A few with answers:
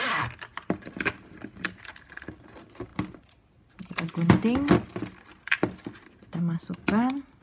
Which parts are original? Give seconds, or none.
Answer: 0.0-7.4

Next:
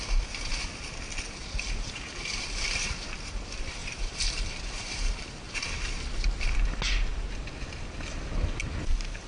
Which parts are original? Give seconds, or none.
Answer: 0.0-1.4; 2.3-3.8; 6.3-9.3